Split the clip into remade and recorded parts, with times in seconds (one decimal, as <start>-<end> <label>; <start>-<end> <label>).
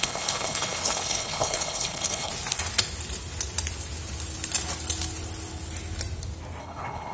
0.0-2.3 remade; 2.3-6.6 recorded; 6.6-7.1 remade